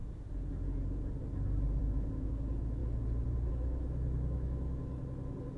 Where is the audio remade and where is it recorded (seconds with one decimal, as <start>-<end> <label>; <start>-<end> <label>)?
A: 0.0-1.8 recorded; 1.8-2.8 remade; 2.8-3.5 recorded; 3.5-4.8 remade; 4.8-5.6 recorded